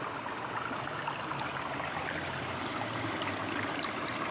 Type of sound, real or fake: real